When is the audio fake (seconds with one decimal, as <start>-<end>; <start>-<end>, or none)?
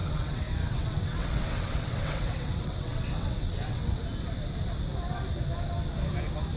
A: 0.0-4.0